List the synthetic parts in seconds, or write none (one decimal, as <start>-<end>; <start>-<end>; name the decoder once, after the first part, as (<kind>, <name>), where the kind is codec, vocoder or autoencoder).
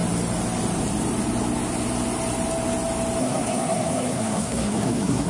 3.2-5.3 (codec, SNAC)